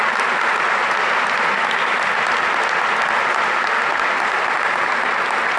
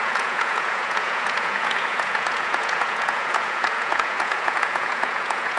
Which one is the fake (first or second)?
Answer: second